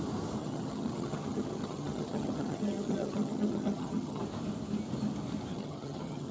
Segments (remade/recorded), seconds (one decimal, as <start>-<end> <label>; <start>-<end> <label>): 0.0-0.4 recorded; 0.4-4.2 remade; 4.2-5.5 recorded; 5.5-6.3 remade